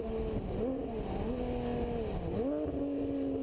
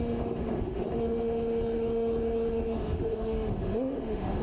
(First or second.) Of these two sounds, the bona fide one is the first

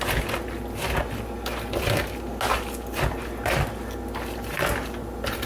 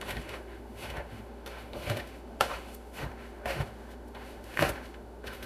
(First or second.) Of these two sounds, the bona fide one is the first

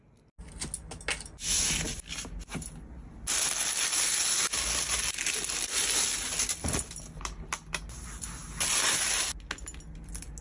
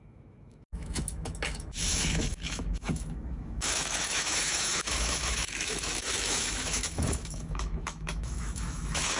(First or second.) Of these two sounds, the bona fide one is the first